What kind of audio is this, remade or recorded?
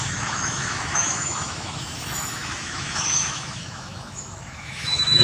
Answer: remade